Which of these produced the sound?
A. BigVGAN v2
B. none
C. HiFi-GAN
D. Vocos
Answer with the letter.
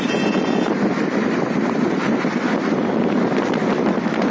B